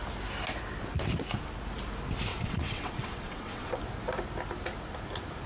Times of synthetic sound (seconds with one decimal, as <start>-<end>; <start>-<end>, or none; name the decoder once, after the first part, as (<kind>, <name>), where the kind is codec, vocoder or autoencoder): 2.3-3.8 (vocoder, WaveNeXt)